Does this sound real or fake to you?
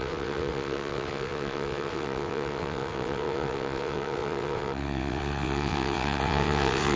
fake